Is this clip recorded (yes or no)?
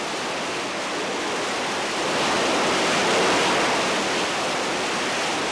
yes